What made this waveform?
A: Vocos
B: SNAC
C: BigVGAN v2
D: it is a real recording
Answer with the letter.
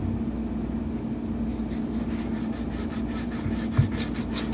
D